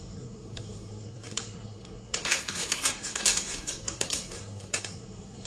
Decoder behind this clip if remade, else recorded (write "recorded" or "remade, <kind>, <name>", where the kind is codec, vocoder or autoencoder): remade, codec, SNAC